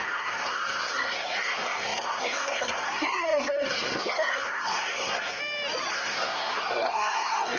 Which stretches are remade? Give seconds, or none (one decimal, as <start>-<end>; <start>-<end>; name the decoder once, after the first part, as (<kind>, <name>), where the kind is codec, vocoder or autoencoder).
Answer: 0.0-5.4 (codec, SNAC); 5.9-7.6